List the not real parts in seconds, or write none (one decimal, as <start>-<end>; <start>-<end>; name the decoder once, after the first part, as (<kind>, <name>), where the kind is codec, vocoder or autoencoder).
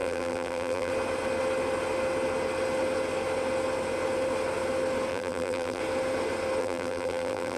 0.0-0.9 (vocoder, BigVGAN v2); 5.1-5.8; 6.6-7.6